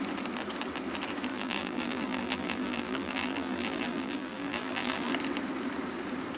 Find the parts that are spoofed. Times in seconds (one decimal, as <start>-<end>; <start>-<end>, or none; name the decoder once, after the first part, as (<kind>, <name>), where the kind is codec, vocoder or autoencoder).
1.3-5.1 (vocoder, BigVGAN v2)